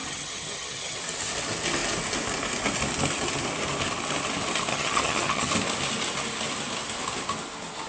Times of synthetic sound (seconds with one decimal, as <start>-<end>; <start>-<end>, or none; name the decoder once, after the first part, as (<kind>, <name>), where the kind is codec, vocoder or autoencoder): 0.0-1.0 (vocoder, HiFi-GAN); 4.7-5.5